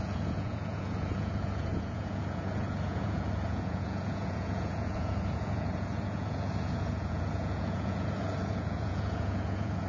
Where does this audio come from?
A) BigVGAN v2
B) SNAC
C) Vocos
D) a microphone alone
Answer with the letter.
C